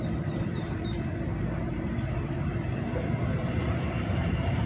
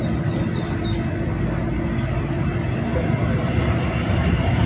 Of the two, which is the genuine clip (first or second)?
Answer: second